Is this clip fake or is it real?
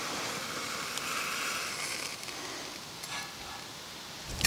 real